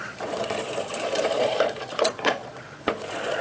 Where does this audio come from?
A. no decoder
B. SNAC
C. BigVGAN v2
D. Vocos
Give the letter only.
D